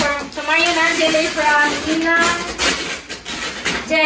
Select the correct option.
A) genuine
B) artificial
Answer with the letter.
A